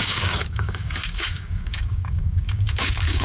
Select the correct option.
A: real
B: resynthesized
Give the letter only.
B